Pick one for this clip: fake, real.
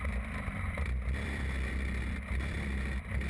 fake